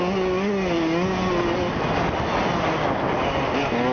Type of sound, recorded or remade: recorded